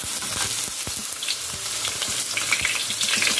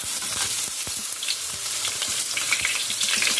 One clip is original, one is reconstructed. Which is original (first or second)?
first